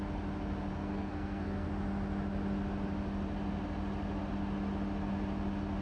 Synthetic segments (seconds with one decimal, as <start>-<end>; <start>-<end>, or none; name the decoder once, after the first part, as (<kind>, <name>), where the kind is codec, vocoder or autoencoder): 0.7-1.7 (codec, SNAC)